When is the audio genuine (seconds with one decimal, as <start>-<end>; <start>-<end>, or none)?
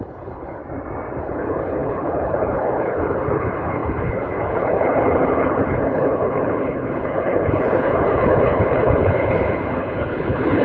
0.6-1.2